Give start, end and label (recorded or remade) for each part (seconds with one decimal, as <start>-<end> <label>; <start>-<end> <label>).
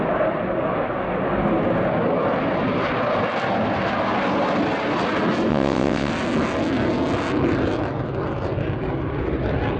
0.0-5.5 recorded; 5.5-6.1 remade; 6.1-9.8 recorded